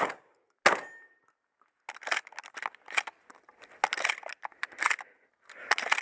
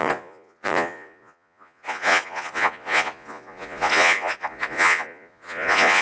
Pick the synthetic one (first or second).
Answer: second